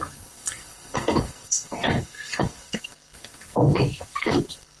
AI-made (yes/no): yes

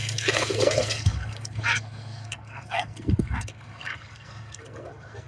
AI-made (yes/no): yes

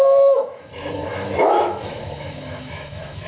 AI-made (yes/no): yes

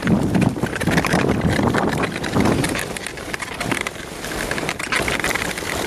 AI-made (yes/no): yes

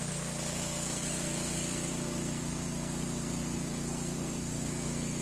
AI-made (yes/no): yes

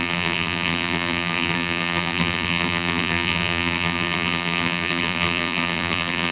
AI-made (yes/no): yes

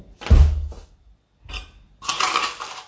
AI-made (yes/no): no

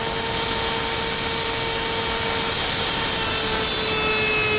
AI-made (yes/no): no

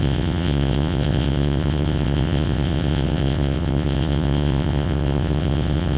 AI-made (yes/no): yes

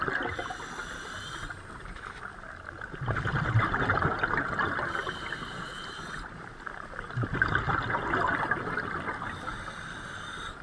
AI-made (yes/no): no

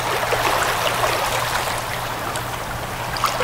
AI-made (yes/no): no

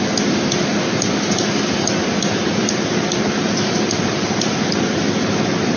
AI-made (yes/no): no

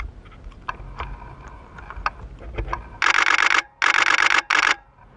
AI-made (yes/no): no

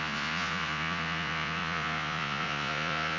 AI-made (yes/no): yes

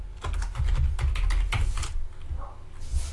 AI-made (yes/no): no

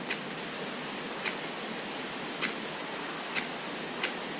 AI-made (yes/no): no